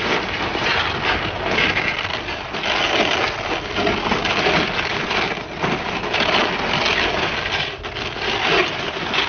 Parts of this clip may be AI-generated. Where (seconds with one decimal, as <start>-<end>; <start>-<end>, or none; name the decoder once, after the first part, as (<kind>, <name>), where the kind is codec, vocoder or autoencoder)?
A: none

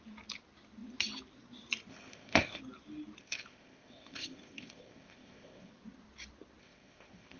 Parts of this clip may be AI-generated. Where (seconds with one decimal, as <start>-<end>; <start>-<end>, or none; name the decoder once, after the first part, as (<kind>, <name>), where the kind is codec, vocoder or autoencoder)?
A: 1.9-2.6 (codec, ZipCodec); 3.2-5.7; 6.6-7.4